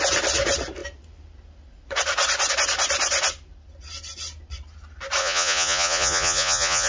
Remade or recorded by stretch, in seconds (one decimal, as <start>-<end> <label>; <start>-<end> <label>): 0.0-5.2 recorded; 5.2-6.9 remade